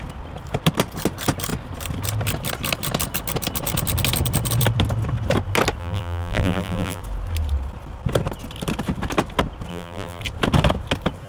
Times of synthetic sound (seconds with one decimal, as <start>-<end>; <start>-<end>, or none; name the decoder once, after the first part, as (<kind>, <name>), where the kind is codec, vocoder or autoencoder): 5.8-7.0 (vocoder, BigVGAN v2); 9.7-10.2